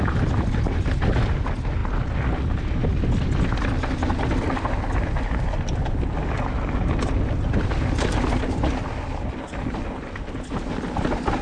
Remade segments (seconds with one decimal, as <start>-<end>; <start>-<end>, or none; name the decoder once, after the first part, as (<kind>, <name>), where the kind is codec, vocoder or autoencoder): none